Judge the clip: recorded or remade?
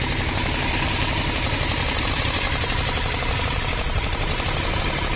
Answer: recorded